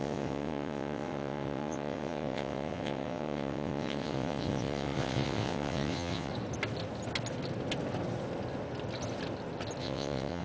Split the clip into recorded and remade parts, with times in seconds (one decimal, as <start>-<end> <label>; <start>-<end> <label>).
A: 0.0-6.3 remade; 6.3-9.8 recorded; 9.8-10.4 remade